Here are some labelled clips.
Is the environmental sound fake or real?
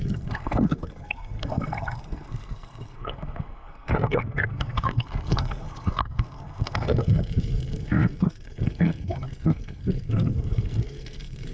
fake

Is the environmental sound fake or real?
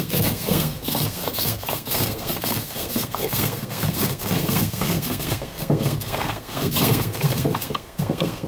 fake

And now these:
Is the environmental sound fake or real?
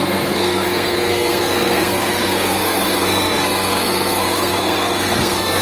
fake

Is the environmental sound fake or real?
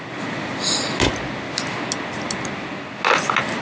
real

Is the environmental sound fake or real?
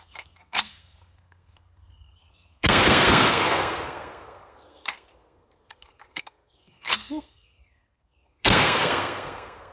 fake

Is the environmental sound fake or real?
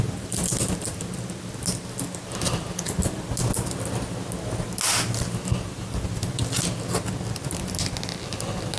real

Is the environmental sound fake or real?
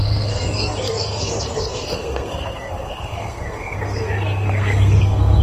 fake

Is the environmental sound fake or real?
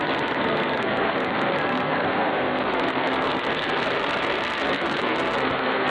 fake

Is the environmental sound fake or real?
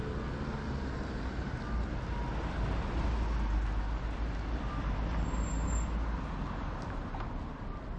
real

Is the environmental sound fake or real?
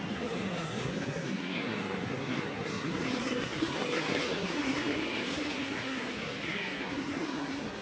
fake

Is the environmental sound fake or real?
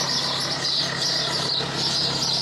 real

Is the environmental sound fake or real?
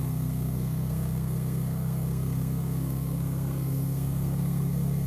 fake